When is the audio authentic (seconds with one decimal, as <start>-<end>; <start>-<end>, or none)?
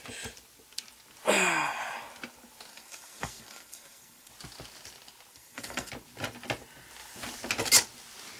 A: 0.0-2.7; 4.3-5.3; 5.9-8.4